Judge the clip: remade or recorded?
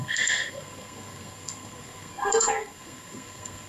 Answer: remade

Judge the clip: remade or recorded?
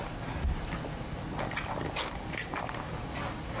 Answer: recorded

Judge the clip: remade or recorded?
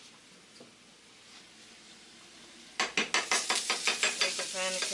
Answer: recorded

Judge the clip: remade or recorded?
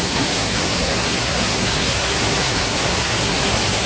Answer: remade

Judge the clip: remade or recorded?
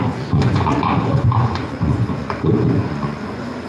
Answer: remade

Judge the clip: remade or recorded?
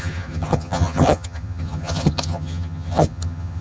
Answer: remade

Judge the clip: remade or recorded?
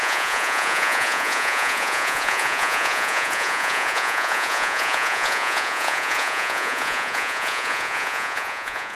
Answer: remade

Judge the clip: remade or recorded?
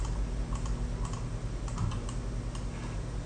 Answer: recorded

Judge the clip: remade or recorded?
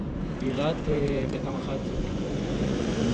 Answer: remade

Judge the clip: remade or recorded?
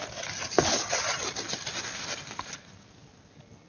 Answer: recorded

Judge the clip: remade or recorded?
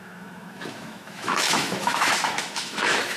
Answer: remade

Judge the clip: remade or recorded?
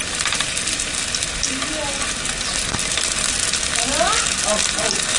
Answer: recorded